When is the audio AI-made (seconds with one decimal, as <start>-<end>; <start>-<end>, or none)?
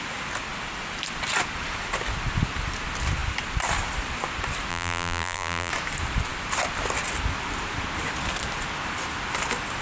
4.7-5.7